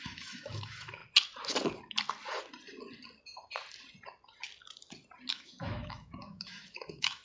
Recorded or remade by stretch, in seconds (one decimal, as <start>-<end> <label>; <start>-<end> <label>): 0.0-1.0 remade; 1.0-5.3 recorded; 5.3-7.2 remade